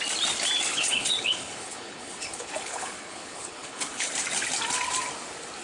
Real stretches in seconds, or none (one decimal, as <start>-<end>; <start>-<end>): 0.0-0.7; 4.1-5.6